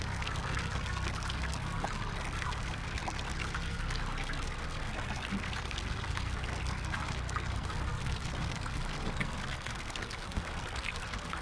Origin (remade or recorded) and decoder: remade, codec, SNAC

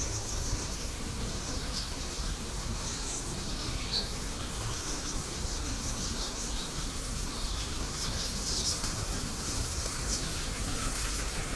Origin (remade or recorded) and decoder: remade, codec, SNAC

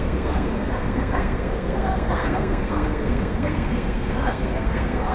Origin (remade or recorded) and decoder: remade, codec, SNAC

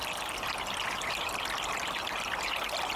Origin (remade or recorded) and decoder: recorded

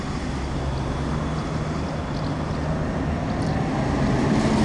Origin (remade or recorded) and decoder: recorded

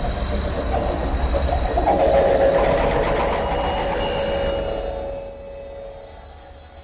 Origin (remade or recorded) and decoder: recorded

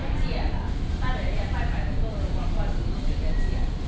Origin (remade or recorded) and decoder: recorded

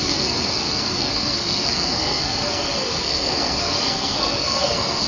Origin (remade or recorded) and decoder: remade, codec, SNAC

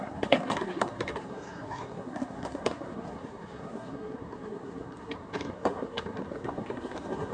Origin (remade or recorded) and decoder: remade, codec, SNAC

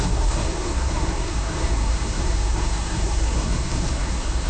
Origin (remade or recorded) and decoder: remade, codec, SNAC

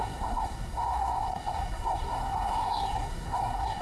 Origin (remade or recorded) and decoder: remade, codec, SNAC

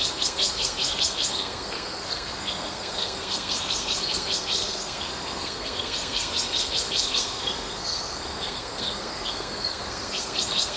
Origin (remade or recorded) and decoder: remade, codec, SNAC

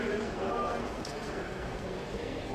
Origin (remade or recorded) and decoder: remade, codec, SNAC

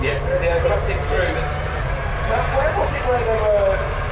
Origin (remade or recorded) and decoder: recorded